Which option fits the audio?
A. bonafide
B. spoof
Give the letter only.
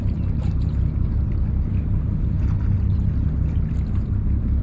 A